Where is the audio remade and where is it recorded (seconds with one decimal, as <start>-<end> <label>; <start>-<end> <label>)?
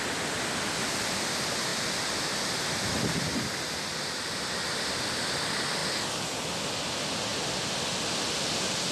0.0-8.9 recorded